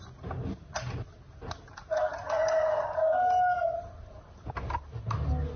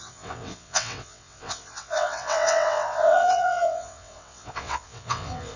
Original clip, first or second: first